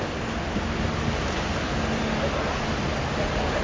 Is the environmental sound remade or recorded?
recorded